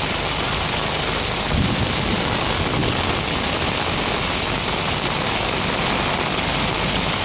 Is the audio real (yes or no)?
yes